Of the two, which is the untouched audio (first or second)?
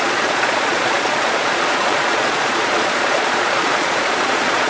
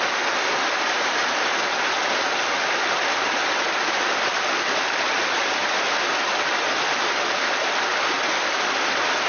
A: second